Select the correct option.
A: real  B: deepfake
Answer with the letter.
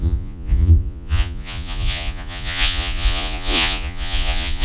B